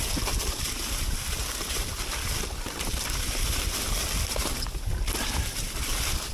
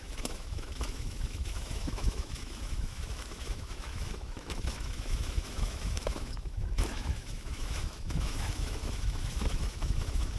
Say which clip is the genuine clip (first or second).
first